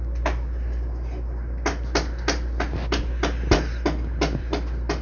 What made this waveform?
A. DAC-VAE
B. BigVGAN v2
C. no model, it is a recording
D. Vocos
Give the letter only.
C